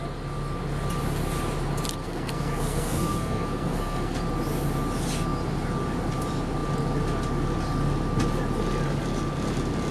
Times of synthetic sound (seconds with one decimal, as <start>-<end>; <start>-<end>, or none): 2.0-4.2